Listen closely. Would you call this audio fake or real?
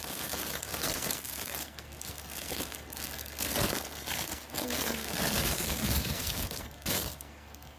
fake